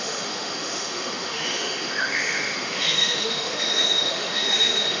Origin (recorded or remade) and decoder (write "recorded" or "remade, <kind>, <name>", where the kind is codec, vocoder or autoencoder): remade, autoencoder, DAC-VAE